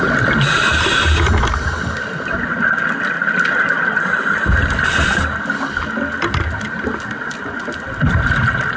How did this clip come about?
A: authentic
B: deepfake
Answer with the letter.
A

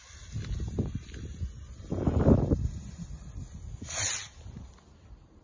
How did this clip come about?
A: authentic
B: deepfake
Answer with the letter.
A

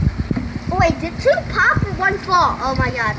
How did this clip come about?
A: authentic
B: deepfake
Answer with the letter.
A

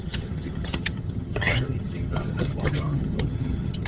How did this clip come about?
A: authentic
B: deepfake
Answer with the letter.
B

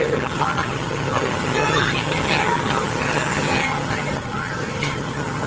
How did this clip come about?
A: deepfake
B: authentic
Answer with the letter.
A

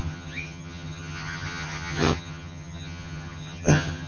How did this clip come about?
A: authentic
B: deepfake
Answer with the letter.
B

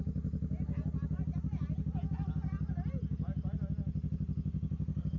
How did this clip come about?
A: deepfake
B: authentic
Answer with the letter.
B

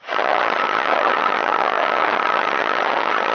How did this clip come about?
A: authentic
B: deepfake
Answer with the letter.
B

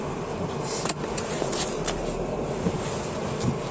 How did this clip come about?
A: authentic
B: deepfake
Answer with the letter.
A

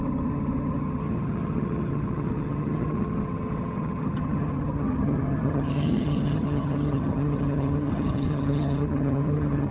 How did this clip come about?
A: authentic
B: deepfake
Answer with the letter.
B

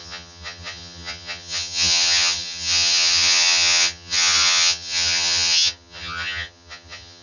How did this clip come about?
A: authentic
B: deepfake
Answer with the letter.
B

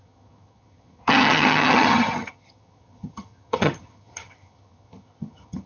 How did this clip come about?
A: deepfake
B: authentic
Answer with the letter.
A